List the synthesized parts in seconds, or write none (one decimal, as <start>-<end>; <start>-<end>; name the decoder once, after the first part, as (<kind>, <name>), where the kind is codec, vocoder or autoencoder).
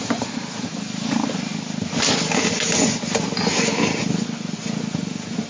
0.0-1.5 (vocoder, BigVGAN v2); 4.8-5.5